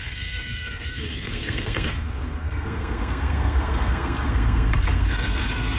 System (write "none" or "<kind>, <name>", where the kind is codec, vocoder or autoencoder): codec, SNAC